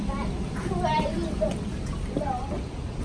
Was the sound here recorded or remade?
recorded